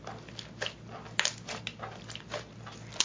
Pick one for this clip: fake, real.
real